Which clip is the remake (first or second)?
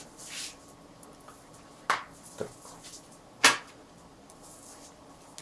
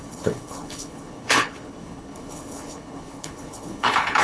second